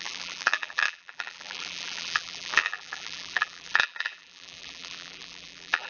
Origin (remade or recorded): remade